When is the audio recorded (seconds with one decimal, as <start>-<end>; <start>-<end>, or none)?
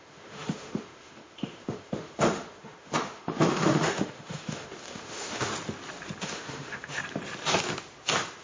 5.5-6.2; 7.0-8.4